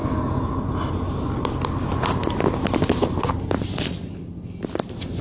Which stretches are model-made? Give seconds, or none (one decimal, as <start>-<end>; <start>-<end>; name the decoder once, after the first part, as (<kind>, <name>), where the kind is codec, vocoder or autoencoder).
none